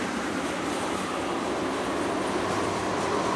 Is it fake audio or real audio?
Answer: real